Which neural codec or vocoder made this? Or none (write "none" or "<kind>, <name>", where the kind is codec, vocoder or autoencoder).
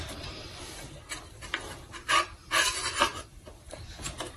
vocoder, BigVGAN v2